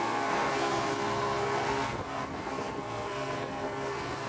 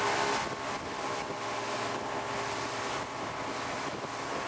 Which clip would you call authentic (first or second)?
second